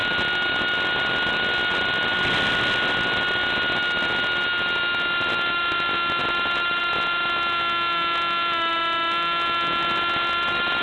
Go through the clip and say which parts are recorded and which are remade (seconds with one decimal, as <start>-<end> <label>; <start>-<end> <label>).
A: 0.0-10.8 recorded